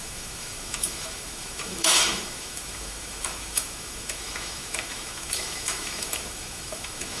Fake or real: fake